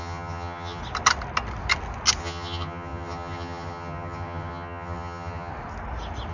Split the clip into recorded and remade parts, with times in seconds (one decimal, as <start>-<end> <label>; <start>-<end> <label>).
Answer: 0.0-0.8 remade; 0.8-2.2 recorded; 2.2-5.5 remade; 5.5-6.3 recorded